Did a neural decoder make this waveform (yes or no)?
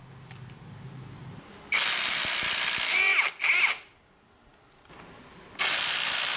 no